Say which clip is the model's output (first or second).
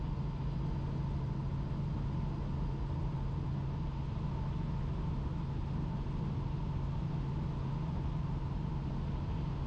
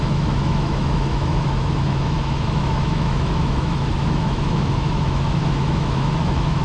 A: second